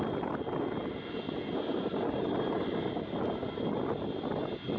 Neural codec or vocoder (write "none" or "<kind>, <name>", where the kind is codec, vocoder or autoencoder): none